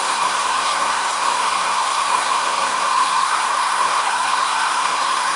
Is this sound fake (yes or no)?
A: yes